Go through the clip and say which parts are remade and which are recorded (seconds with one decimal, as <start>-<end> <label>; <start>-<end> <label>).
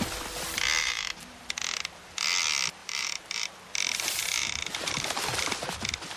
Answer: 0.0-0.8 recorded; 0.8-1.4 remade; 1.4-2.8 recorded; 2.8-3.5 remade; 3.5-4.4 recorded; 4.4-5.2 remade; 5.2-6.2 recorded